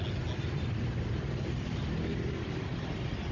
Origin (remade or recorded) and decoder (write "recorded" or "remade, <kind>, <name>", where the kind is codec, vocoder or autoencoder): recorded